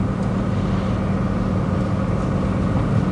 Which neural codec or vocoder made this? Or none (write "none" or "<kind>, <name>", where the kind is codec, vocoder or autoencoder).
none